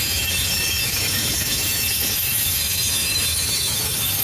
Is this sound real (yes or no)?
no